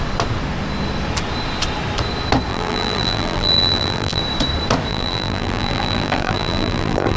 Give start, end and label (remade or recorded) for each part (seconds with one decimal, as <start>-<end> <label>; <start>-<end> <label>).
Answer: 0.0-2.5 recorded; 2.5-4.2 remade; 4.2-4.9 recorded; 4.9-7.2 remade